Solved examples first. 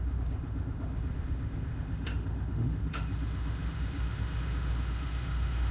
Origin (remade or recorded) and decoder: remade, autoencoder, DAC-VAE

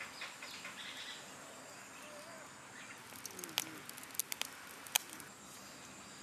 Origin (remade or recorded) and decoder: recorded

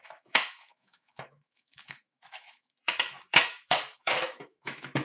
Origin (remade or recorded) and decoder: remade, autoencoder, DAC-VAE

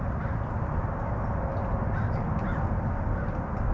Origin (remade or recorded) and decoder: recorded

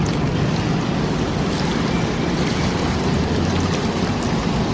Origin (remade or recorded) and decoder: recorded